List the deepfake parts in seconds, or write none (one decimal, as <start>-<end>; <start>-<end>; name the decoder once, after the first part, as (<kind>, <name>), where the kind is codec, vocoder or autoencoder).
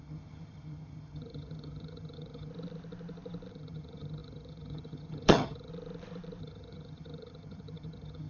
0.0-2.5 (vocoder, HiFi-GAN); 3.5-5.7; 6.4-8.3